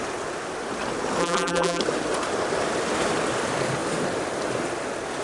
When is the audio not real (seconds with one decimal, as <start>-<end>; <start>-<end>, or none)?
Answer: 1.2-1.8